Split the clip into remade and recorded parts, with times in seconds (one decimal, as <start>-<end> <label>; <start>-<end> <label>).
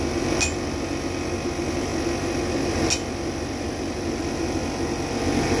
0.0-5.6 recorded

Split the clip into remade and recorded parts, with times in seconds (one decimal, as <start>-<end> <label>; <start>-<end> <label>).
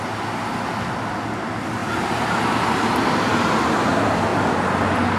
0.0-5.2 recorded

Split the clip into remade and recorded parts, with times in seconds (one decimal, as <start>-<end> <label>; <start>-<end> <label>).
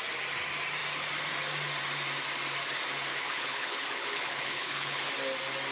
0.0-3.1 recorded; 3.1-5.1 remade; 5.1-5.7 recorded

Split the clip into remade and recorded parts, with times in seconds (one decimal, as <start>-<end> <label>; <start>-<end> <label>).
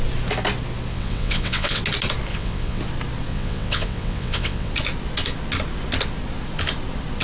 0.0-0.9 recorded; 0.9-1.8 remade; 1.8-2.3 recorded; 2.3-2.8 remade; 2.8-3.3 recorded; 3.3-4.7 remade; 4.7-7.2 recorded